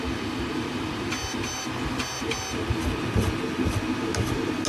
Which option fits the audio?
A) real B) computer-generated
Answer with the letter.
A